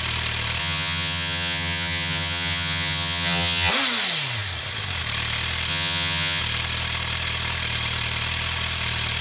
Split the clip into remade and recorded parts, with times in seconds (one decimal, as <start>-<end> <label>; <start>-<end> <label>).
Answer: 0.0-0.6 recorded; 0.6-3.7 remade; 3.7-5.7 recorded; 5.7-6.4 remade; 6.4-9.2 recorded